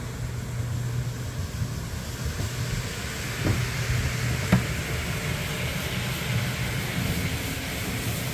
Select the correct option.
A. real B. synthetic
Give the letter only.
A